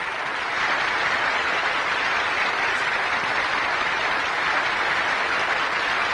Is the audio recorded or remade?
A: recorded